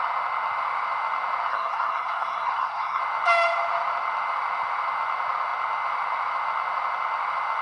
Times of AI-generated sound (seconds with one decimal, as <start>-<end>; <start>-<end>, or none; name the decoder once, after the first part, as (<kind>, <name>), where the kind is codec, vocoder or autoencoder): 1.5-3.0 (codec, SNAC)